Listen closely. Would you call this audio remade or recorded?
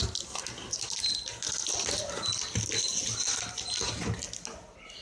recorded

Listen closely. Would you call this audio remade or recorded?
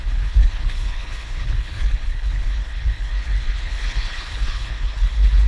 remade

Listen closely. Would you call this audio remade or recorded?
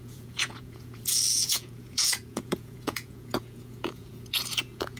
remade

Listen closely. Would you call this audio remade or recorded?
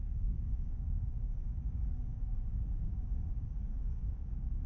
remade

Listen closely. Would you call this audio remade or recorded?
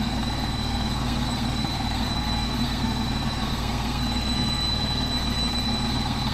remade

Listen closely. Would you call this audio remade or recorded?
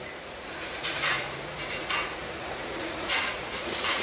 remade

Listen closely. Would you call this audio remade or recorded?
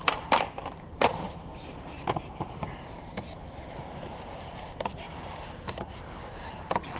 remade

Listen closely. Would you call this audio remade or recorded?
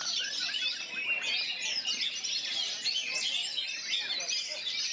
recorded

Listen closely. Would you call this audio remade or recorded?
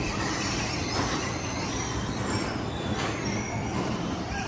remade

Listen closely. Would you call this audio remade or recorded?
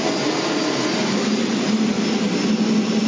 recorded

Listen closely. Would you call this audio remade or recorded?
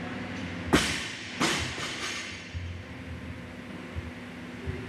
recorded